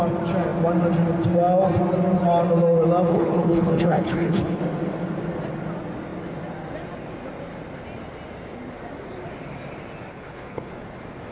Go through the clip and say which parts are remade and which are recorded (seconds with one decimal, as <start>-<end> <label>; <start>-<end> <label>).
0.0-3.1 recorded; 3.1-4.6 remade; 4.6-10.1 recorded; 10.1-10.7 remade; 10.7-11.3 recorded